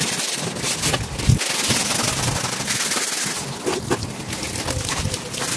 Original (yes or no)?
yes